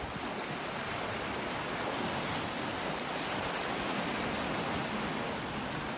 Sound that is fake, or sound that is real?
real